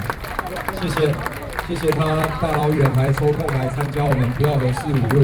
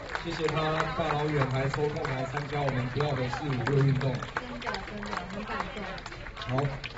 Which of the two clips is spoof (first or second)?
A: first